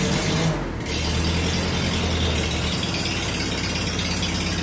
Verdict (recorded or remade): recorded